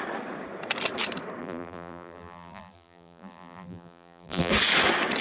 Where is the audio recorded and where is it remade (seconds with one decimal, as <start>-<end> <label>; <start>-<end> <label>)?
0.0-1.4 recorded; 1.4-4.5 remade; 4.5-5.2 recorded